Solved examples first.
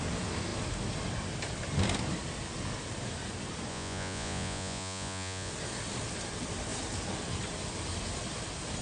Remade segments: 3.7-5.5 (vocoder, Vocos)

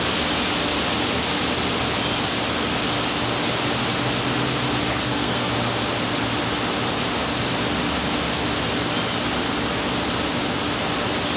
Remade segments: 4.9-5.5 (codec, SNAC)

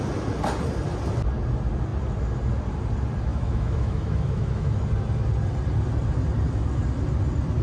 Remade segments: 3.3-4.7 (autoencoder, DAC-VAE)

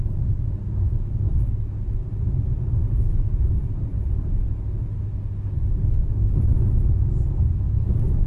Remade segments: none

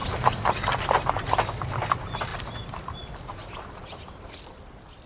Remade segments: 2.3-5.1 (vocoder, BigVGAN v2)

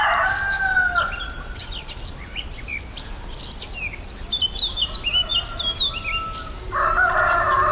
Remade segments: none

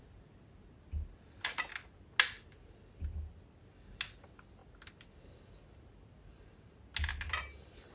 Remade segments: none